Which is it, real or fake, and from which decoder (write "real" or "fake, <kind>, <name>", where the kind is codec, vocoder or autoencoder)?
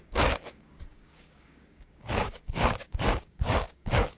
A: fake, codec, DAC